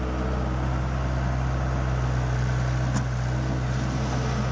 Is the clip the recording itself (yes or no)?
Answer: yes